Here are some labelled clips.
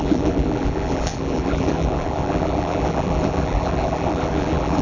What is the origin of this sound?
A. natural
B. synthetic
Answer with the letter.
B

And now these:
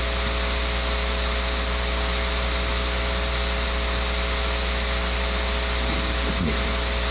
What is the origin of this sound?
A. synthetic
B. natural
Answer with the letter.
B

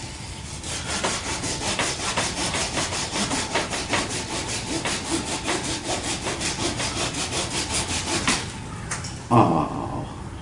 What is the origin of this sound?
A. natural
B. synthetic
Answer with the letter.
A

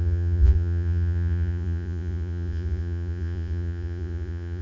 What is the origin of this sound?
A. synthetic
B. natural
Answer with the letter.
A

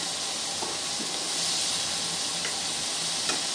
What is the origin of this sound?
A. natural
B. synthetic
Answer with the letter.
A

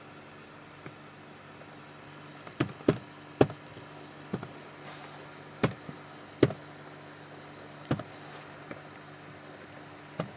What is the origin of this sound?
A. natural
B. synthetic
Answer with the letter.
A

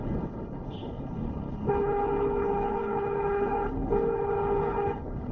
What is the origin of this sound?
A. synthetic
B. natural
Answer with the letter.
A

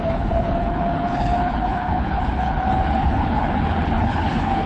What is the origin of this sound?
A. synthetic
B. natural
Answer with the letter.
A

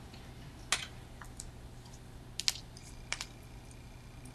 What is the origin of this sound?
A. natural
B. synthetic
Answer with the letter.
A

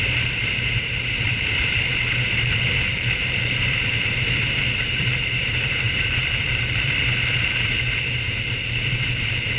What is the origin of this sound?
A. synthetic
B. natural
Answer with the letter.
A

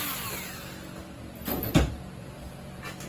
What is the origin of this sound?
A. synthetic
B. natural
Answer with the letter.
B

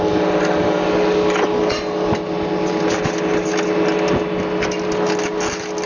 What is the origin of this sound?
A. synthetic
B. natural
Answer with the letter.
B